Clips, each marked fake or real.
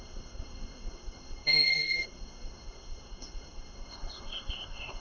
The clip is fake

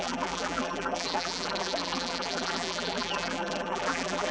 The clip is fake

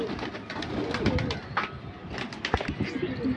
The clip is real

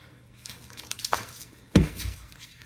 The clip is fake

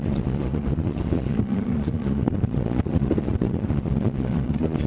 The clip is fake